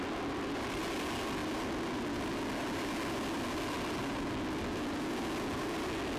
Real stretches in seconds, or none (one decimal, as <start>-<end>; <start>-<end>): 0.0-6.2